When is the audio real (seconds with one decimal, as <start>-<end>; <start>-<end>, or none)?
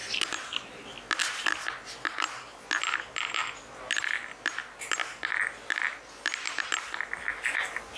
0.0-8.0